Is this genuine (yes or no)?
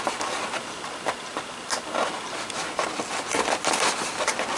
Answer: yes